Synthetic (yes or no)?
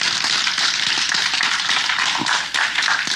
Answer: no